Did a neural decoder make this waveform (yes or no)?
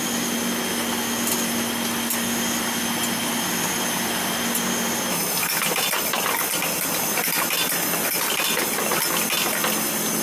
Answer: no